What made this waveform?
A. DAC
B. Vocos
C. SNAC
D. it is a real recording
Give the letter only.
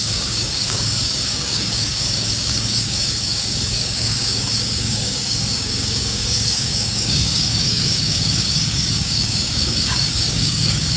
A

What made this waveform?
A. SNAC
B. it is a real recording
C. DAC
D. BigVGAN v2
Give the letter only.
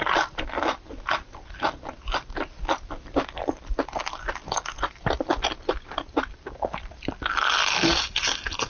B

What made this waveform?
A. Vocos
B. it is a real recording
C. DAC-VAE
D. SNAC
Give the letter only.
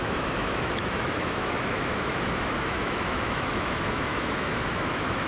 C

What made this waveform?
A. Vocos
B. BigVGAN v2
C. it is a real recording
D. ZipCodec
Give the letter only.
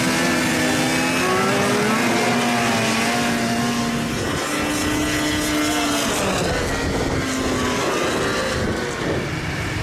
C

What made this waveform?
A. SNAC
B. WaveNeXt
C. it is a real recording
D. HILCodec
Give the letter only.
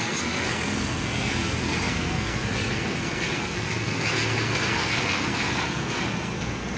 A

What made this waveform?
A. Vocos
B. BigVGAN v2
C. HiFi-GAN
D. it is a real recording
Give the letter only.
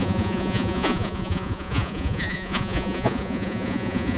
A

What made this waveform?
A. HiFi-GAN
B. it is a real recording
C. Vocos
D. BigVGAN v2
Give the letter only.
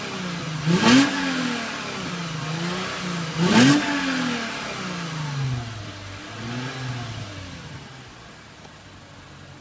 B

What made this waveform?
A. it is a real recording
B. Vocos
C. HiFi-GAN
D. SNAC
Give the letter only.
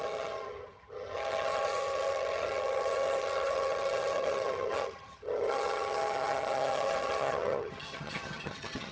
C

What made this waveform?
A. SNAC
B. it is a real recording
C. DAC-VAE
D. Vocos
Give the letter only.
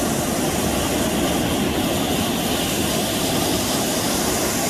B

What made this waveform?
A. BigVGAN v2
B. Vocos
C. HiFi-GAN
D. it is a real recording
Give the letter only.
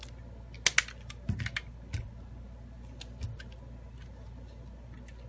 D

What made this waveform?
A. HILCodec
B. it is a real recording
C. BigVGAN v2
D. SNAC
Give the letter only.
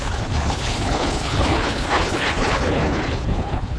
A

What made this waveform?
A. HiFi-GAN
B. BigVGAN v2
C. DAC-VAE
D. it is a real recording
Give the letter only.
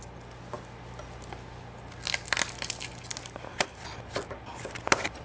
D